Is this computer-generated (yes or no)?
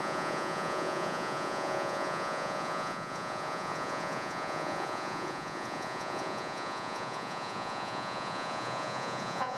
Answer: yes